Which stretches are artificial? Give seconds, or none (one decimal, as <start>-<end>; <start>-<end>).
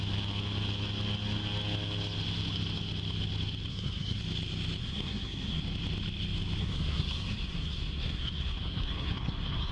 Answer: 3.7-4.2; 4.8-5.6; 6.6-9.7